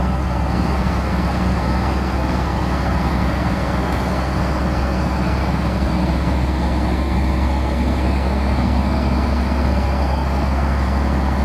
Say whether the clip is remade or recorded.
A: remade